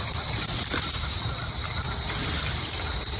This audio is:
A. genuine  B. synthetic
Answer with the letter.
A